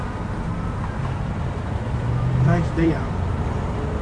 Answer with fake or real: fake